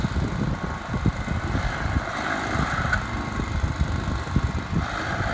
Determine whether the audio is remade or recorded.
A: remade